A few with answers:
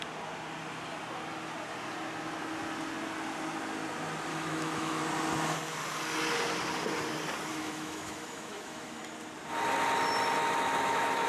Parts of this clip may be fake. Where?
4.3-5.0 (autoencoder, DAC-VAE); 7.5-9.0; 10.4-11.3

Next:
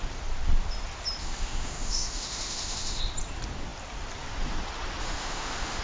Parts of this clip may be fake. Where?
1.2-3.0 (autoencoder, DAC-VAE); 5.0-5.8

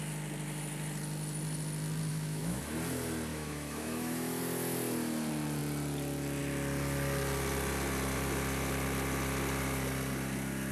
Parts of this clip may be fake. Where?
2.1-2.6 (autoencoder, DAC-VAE); 3.3-4.4

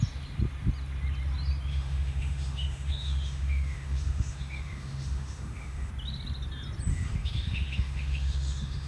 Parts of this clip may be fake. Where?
1.7-5.9 (autoencoder, DAC-VAE); 6.9-8.9

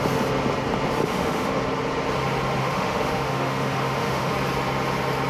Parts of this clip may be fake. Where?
1.0-1.6 (autoencoder, DAC-VAE); 2.6-4.3